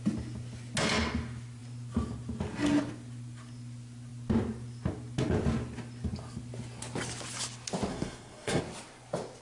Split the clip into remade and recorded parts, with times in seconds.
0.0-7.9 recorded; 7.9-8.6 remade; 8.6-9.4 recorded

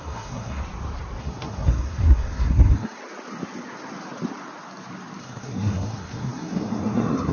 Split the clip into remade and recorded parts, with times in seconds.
0.0-0.6 remade; 0.6-1.2 recorded; 1.2-3.0 remade; 3.0-5.2 recorded; 5.2-7.3 remade

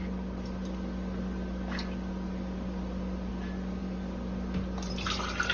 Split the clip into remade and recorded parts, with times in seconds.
0.0-5.5 recorded